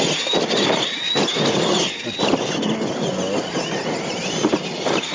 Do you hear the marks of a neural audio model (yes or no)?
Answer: no